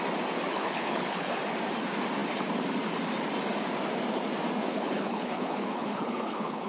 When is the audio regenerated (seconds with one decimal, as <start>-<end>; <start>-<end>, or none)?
0.5-1.4; 4.7-6.7